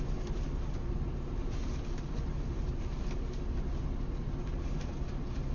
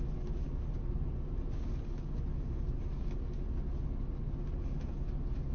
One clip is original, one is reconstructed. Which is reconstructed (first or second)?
first